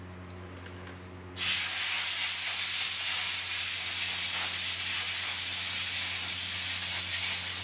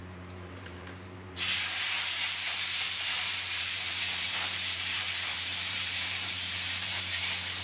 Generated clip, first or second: second